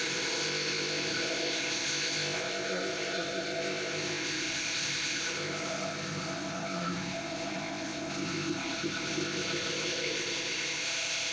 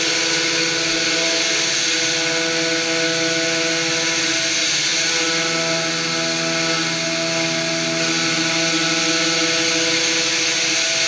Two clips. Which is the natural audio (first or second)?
second